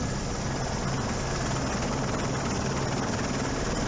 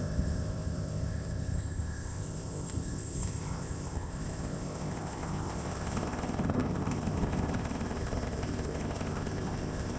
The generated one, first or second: second